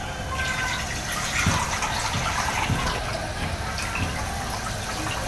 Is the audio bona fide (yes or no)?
yes